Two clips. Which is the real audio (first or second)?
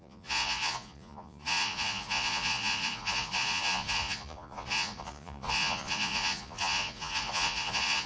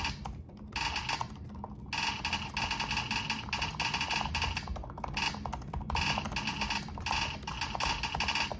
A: second